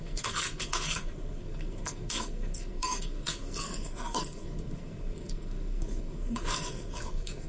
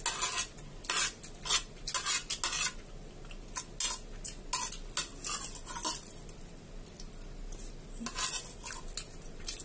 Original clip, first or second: second